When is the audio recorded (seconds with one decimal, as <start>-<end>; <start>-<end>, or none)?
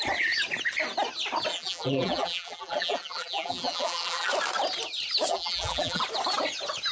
0.0-1.5; 4.3-5.3; 6.0-6.9